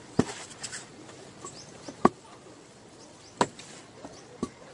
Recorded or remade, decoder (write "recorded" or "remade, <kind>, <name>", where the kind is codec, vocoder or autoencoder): recorded